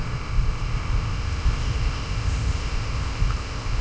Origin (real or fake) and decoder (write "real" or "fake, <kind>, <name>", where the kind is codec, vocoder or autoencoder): fake, codec, ZipCodec